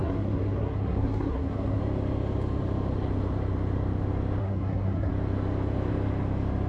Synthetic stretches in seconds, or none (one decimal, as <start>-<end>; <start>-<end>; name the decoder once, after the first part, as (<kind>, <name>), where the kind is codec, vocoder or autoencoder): 0.0-1.8 (codec, SNAC); 4.4-5.1